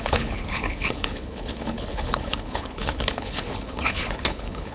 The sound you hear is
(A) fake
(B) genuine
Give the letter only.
A